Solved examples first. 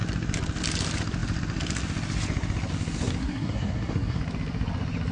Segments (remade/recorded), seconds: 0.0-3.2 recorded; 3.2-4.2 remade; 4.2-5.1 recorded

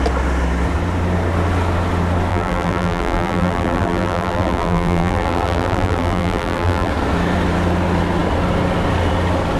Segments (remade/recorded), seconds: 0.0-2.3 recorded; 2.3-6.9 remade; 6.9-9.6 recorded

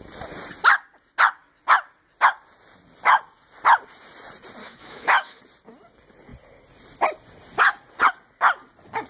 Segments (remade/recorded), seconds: 0.0-4.6 recorded; 4.6-5.4 remade; 5.4-9.1 recorded

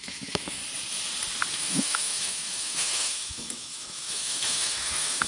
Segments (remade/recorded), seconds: 0.0-0.6 remade; 0.6-1.5 recorded; 1.5-5.3 remade

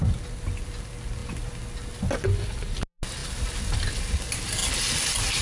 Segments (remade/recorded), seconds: 0.0-5.4 recorded